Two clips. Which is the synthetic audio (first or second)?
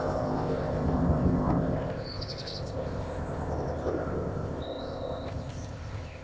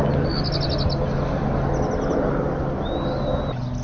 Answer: first